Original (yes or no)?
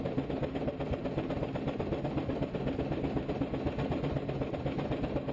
yes